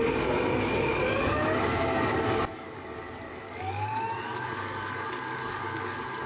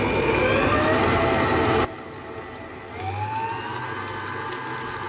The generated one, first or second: first